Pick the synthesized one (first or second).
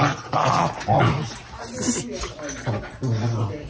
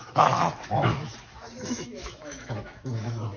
second